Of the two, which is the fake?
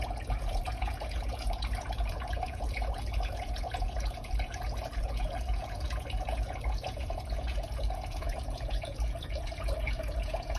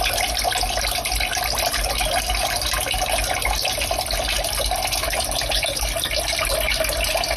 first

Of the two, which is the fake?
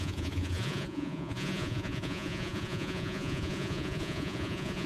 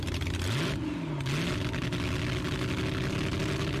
first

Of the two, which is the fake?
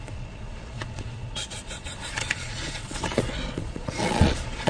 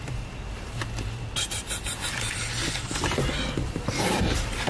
first